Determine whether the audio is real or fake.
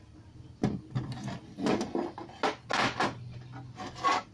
real